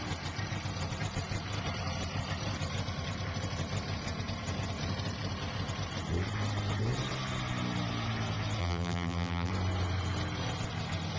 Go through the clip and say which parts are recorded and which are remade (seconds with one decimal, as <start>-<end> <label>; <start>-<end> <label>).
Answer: 0.0-8.6 recorded; 8.6-9.5 remade; 9.5-11.2 recorded